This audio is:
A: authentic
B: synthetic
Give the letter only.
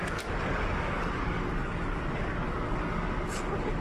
B